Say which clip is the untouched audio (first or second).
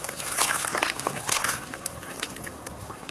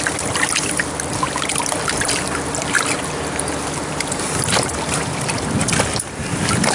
second